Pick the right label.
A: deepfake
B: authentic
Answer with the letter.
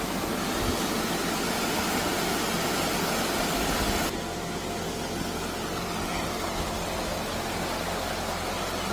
B